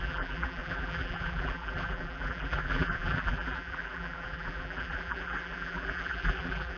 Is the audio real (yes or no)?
no